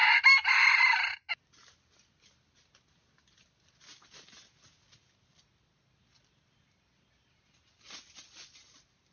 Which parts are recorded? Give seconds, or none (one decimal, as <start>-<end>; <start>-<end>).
1.3-9.1